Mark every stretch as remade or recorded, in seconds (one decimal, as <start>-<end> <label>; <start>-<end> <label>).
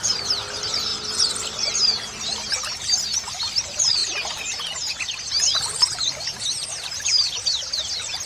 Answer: 0.0-8.3 recorded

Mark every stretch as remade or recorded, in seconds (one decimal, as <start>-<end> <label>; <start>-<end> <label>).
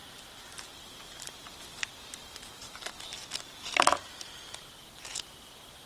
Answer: 0.0-0.9 remade; 0.9-5.9 recorded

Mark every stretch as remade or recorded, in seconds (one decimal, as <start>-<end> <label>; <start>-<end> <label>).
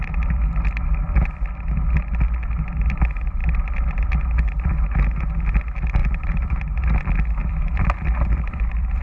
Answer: 0.0-6.0 recorded; 6.0-6.8 remade; 6.8-7.4 recorded; 7.4-9.0 remade